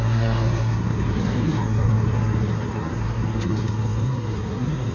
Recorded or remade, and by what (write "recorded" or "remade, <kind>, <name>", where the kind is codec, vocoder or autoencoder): remade, codec, SNAC